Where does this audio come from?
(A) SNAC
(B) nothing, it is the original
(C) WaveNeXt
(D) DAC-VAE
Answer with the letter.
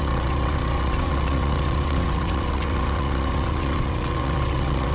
C